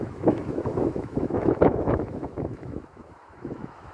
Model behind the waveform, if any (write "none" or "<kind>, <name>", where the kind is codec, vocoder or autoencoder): autoencoder, DAC-VAE